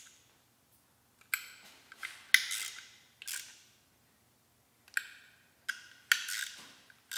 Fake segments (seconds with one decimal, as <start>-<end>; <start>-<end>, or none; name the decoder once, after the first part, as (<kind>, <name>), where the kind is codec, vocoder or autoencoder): none